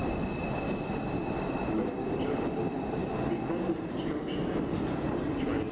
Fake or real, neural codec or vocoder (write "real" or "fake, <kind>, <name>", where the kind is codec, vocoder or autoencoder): real